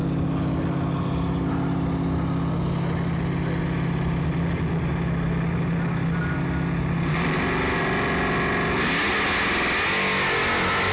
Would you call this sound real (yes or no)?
yes